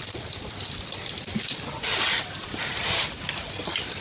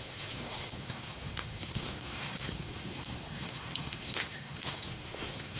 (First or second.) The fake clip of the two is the second